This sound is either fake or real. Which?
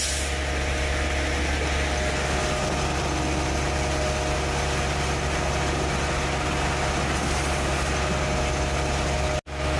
real